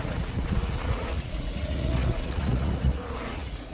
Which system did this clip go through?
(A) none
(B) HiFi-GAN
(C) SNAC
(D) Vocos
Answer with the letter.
D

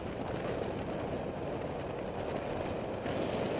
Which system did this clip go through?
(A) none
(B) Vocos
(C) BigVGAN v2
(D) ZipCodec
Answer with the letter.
A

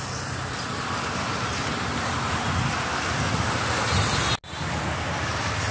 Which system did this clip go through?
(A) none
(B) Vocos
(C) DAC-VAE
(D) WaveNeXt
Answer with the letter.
A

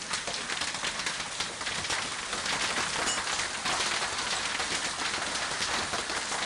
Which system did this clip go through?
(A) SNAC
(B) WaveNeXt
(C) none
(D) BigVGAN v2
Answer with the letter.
C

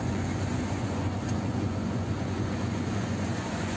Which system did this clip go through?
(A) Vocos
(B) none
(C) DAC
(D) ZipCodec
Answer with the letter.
A